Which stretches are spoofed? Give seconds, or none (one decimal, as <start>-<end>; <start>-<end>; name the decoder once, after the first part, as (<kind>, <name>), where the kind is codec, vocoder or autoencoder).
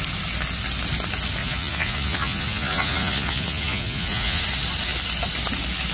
1.4-4.4 (vocoder, Vocos)